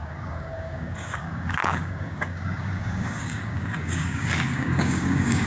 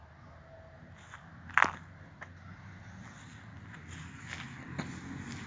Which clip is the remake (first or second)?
first